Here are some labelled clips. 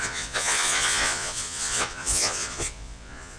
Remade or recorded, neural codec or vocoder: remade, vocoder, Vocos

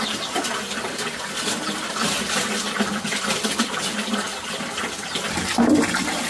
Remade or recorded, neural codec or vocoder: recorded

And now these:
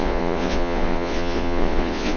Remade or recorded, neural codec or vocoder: remade, vocoder, Vocos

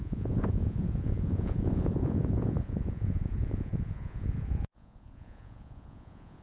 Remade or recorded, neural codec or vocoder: remade, vocoder, Vocos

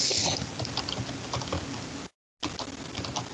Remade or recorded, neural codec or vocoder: recorded